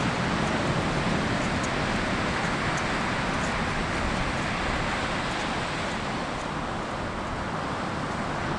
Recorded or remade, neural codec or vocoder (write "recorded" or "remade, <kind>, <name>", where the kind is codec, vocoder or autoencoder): recorded